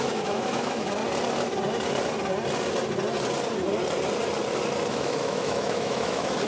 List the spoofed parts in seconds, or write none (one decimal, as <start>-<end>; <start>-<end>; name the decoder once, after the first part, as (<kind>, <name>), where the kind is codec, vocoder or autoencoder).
0.0-1.0 (autoencoder, DAC-VAE); 4.9-6.5